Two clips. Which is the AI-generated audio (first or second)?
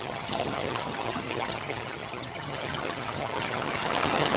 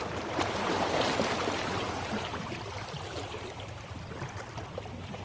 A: first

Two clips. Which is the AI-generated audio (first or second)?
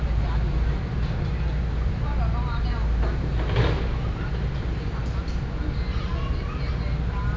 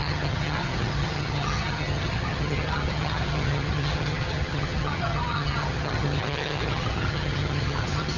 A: second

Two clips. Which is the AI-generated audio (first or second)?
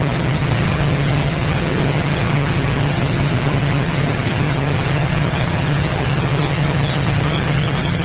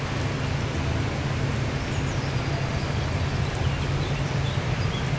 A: first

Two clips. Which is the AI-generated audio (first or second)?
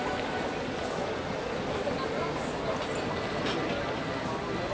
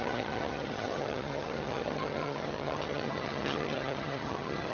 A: second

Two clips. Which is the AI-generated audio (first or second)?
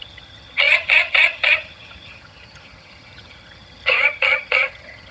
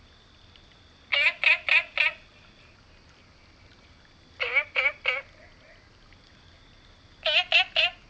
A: first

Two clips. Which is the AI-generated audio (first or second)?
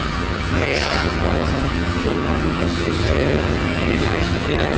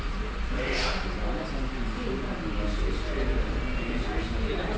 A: first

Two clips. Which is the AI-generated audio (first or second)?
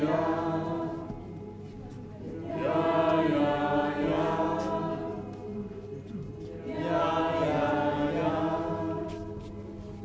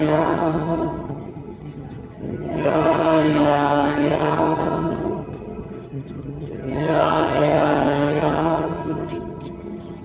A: second